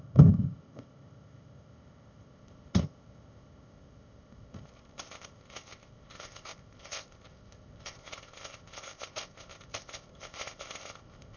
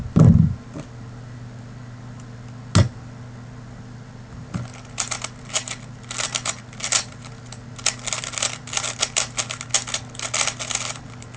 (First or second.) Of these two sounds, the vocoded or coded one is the first